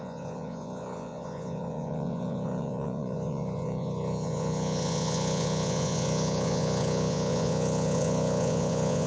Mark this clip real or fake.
fake